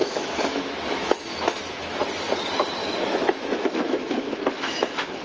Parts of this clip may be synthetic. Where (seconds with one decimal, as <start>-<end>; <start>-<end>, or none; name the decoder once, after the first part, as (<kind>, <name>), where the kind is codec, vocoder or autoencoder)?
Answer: 0.0-2.0 (autoencoder, DAC-VAE); 2.8-5.2